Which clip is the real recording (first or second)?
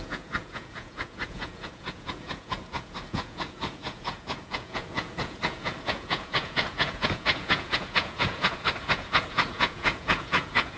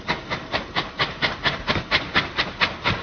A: second